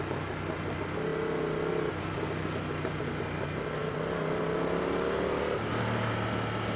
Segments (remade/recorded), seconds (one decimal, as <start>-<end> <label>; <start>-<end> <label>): 0.0-6.8 recorded